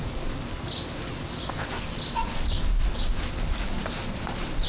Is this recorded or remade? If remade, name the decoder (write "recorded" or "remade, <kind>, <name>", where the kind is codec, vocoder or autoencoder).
recorded